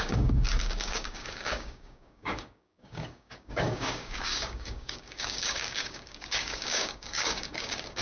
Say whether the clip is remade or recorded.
remade